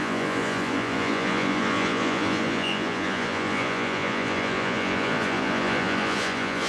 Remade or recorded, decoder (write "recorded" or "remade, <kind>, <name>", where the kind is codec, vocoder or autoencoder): remade, vocoder, Vocos